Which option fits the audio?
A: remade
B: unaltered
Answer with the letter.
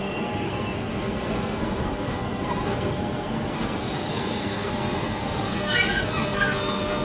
A